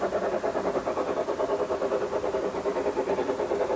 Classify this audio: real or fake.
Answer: real